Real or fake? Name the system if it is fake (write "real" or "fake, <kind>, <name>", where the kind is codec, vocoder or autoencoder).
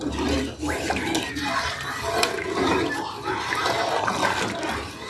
real